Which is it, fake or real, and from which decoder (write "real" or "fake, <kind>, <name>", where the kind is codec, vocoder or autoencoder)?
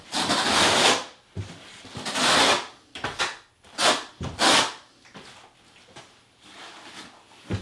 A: real